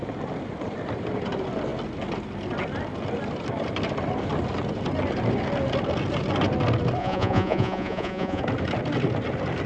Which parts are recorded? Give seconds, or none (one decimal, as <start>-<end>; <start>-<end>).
0.0-7.0; 8.4-9.7